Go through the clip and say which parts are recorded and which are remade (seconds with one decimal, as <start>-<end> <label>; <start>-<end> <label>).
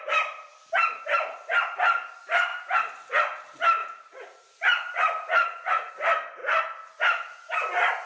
0.0-3.8 recorded; 3.8-5.9 remade; 5.9-8.1 recorded